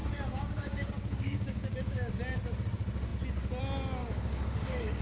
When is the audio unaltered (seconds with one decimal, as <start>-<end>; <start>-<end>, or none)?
2.1-4.0